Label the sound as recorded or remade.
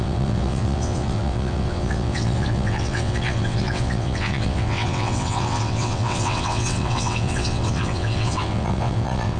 remade